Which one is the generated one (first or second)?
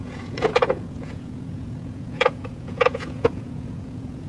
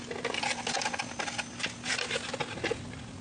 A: first